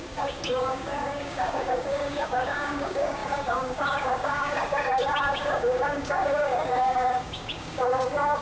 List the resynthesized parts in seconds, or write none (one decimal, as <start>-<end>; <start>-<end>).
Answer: 0.0-8.4